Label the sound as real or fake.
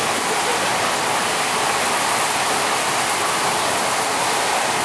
real